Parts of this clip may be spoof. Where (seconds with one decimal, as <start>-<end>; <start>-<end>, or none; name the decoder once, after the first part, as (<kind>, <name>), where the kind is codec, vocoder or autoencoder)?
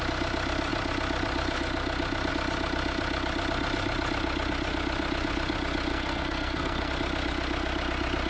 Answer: 5.9-6.9 (codec, SNAC)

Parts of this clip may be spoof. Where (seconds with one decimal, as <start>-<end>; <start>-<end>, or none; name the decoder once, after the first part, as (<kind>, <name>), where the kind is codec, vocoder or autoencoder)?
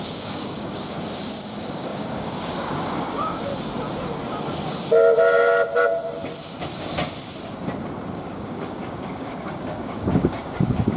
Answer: 0.0-3.5 (codec, DAC); 8.1-11.0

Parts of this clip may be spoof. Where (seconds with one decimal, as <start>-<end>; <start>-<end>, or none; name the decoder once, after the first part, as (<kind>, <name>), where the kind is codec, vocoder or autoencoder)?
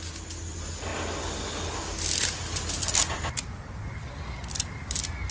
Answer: none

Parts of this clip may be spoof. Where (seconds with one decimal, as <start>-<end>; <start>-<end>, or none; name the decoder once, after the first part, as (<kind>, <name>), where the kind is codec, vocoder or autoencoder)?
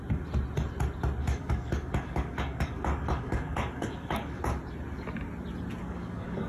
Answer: 1.2-4.4 (codec, DAC); 5.8-6.5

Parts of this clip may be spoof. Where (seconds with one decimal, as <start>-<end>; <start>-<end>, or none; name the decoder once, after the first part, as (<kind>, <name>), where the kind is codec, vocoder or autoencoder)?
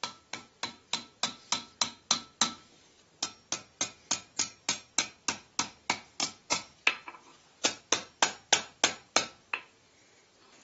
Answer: 6.2-7.8 (vocoder, Vocos)